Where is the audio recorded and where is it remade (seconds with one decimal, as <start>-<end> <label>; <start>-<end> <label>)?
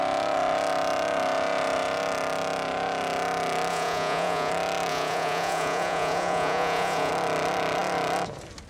0.0-3.7 recorded; 3.7-4.5 remade; 4.5-4.9 recorded; 4.9-7.1 remade; 7.1-8.7 recorded